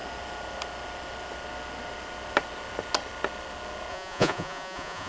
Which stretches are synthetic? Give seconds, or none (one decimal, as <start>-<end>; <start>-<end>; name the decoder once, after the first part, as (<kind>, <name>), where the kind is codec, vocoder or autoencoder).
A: 3.9-5.1 (vocoder, Vocos)